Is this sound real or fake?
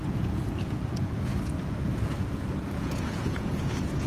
fake